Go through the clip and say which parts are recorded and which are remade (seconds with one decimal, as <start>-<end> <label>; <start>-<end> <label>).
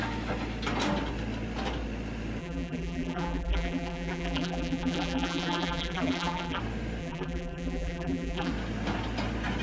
0.0-2.4 recorded; 2.4-6.6 remade; 6.6-7.0 recorded; 7.0-8.5 remade; 8.5-9.6 recorded